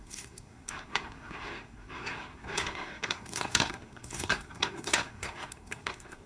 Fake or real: fake